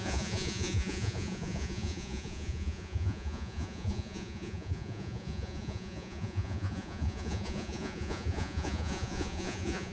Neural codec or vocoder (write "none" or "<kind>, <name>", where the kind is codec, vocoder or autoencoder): vocoder, Vocos